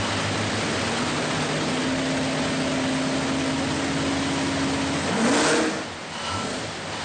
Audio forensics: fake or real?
real